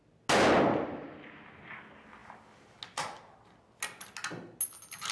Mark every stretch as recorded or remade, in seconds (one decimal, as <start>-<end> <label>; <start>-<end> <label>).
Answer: 0.0-5.1 recorded